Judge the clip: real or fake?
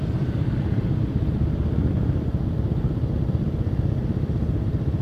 real